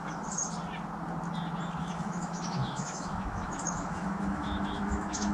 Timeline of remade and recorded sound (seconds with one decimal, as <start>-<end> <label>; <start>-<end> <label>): 0.0-0.4 remade; 0.4-1.8 recorded; 1.8-5.3 remade